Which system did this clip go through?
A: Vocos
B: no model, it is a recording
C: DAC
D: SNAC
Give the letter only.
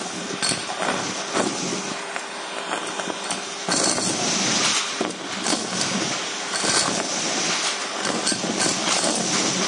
B